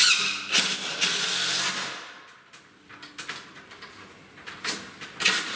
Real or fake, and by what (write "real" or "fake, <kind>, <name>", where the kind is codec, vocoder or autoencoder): real